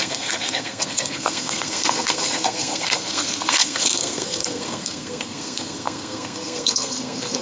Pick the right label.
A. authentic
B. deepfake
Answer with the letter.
B